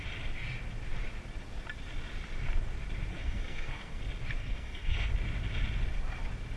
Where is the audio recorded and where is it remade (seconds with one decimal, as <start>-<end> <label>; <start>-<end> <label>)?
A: 0.0-3.1 recorded; 3.1-4.0 remade; 4.0-4.4 recorded; 4.4-5.1 remade; 5.1-6.6 recorded